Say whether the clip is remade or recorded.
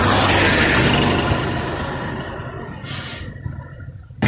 recorded